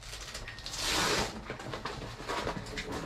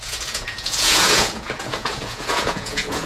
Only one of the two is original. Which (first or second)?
first